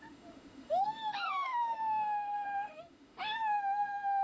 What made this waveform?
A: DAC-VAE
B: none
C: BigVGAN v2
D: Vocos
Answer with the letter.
A